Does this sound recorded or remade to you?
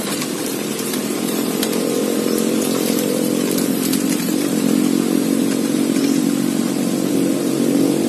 remade